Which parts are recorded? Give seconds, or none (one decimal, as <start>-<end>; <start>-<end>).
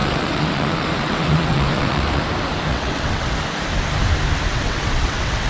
2.2-2.7; 3.3-4.5